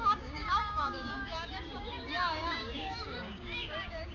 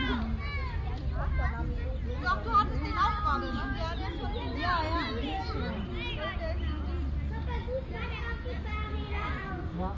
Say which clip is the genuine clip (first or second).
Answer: second